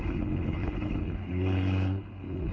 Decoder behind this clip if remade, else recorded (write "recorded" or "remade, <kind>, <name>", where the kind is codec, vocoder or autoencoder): remade, codec, HILCodec